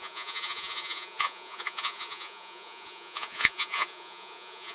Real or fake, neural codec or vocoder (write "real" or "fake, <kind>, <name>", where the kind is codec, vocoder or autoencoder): fake, vocoder, Vocos